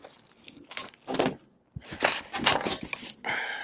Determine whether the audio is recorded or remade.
recorded